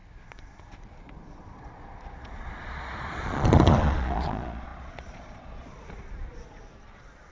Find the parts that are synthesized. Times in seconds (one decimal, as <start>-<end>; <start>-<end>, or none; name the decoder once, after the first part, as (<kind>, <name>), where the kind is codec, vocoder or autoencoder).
0.0-7.3 (vocoder, Vocos)